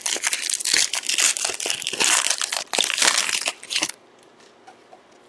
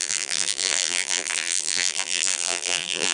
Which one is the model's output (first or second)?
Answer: second